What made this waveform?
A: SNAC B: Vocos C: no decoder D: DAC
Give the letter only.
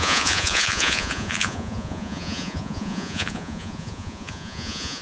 B